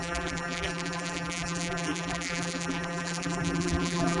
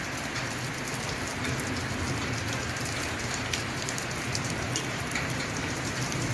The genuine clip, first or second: second